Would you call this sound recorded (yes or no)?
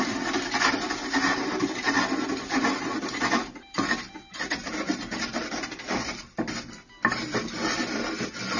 yes